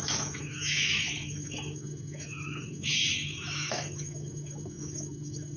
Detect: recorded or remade remade